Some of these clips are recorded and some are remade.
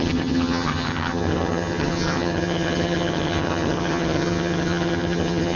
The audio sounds remade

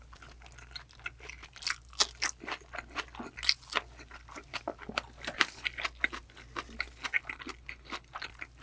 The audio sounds recorded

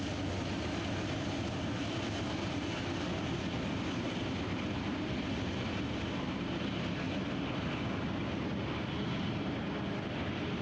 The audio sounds recorded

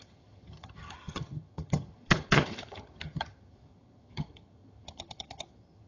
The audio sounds remade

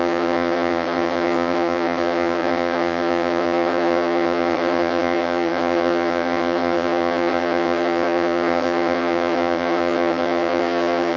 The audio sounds remade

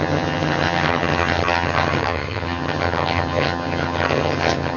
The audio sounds remade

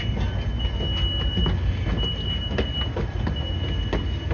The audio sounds recorded